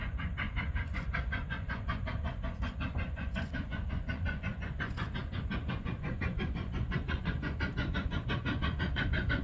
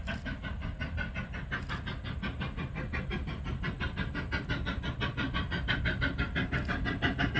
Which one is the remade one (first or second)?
first